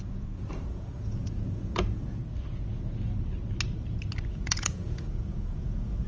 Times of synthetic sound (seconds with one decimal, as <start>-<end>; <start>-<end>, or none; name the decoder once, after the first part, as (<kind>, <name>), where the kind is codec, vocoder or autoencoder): 0.0-2.2 (vocoder, Vocos); 4.3-6.1